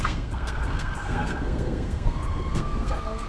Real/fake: fake